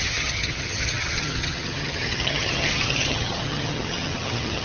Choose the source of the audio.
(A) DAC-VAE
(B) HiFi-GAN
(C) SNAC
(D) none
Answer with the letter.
B